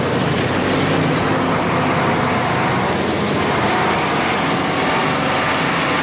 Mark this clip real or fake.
real